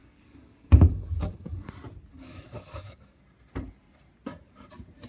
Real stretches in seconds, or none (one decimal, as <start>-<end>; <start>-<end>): 1.7-2.1; 3.2-5.1